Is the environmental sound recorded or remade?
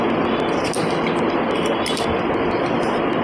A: recorded